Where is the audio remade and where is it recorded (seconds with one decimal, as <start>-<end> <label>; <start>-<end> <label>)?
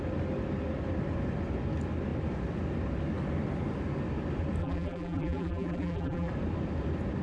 0.0-4.6 recorded; 4.6-6.3 remade; 6.3-7.2 recorded